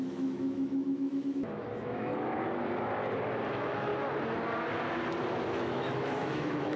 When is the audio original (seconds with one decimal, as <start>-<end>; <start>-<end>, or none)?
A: 2.1-3.5; 3.9-5.5